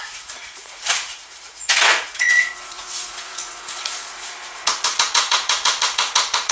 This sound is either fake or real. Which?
fake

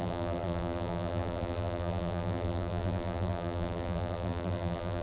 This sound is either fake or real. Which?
fake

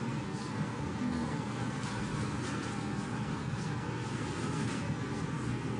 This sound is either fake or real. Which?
fake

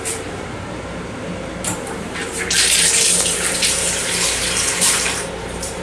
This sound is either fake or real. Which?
fake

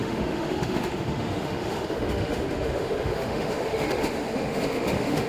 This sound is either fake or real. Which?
fake